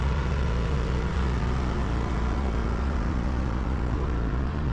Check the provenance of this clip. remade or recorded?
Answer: remade